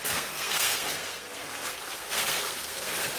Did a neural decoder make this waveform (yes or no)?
yes